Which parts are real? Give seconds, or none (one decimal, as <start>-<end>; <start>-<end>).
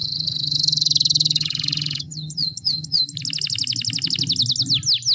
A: 3.0-5.1